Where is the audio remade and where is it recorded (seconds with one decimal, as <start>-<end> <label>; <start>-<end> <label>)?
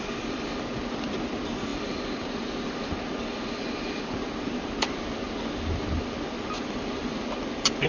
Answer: 0.0-7.9 recorded